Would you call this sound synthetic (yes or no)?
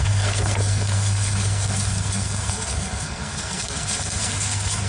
yes